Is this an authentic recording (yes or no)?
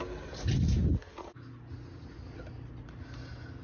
yes